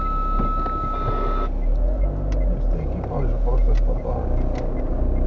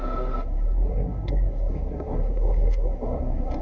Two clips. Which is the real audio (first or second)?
first